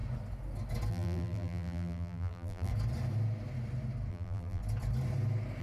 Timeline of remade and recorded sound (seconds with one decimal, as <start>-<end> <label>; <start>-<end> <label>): 0.0-0.9 recorded; 0.9-2.7 remade; 2.7-4.1 recorded; 4.1-4.6 remade; 4.6-5.6 recorded